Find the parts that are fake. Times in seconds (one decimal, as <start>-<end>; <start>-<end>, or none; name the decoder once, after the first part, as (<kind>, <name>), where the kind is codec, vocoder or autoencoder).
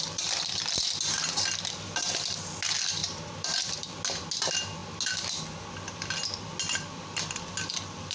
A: 3.0-3.8 (vocoder, BigVGAN v2)